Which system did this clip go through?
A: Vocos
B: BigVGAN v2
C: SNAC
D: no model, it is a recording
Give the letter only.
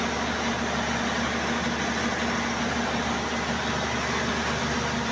D